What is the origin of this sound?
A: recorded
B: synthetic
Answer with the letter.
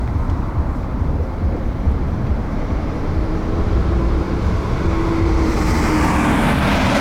B